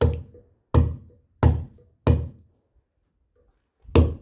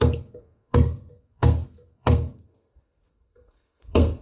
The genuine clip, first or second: first